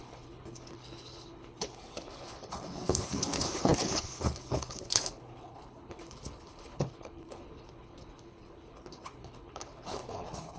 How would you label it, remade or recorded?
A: remade